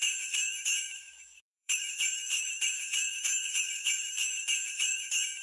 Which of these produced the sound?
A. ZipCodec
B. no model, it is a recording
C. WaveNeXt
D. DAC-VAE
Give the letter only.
D